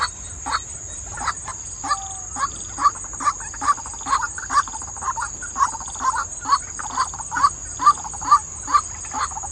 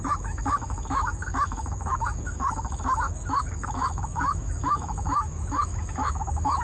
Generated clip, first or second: second